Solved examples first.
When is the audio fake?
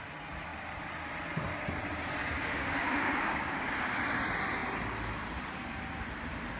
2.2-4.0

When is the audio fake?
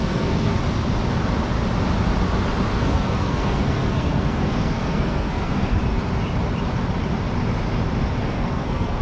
0.0-0.6; 2.7-5.8; 8.2-9.0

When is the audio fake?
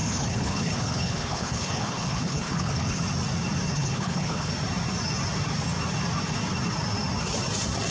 0.0-3.0; 3.7-4.5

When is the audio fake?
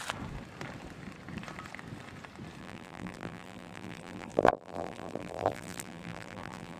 2.6-6.8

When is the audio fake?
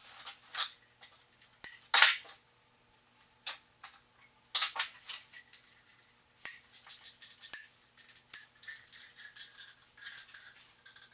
none